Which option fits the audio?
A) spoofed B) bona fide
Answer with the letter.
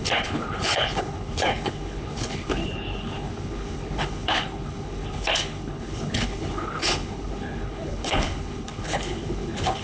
A